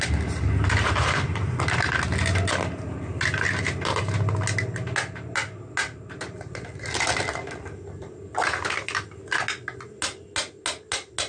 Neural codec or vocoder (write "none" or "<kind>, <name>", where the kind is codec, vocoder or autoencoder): none